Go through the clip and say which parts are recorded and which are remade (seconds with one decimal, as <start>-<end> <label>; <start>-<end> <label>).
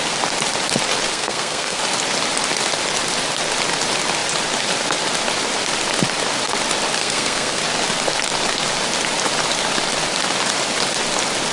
0.0-1.1 recorded; 1.1-1.8 remade; 1.8-7.0 recorded; 7.0-7.6 remade; 7.6-11.5 recorded